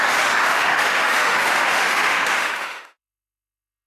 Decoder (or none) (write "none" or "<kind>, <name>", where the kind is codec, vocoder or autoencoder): autoencoder, DAC-VAE